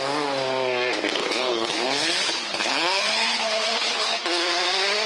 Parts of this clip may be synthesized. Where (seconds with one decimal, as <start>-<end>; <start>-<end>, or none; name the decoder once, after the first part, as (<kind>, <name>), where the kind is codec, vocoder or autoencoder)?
1.2-4.2 (codec, HILCodec)